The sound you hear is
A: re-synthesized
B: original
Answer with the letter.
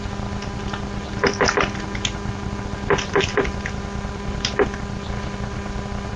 B